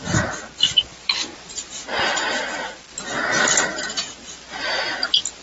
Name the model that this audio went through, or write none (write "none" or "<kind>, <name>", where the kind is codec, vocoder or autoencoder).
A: none